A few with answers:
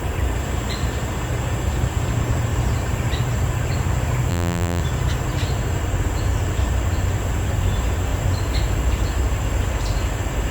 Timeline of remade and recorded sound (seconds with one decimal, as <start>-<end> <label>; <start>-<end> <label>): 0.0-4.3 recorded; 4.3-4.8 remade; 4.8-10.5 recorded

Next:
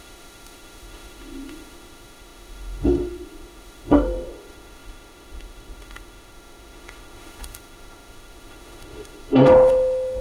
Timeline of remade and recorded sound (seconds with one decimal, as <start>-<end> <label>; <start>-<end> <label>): 0.0-10.2 remade

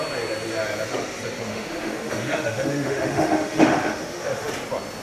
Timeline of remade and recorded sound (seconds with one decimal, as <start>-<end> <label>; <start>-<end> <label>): 0.0-1.5 recorded; 1.5-4.5 remade; 4.5-5.0 recorded